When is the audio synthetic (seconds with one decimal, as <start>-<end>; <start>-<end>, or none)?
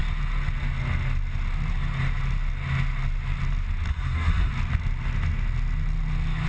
3.9-4.5